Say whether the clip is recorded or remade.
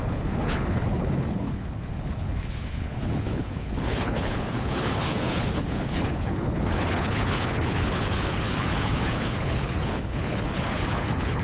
remade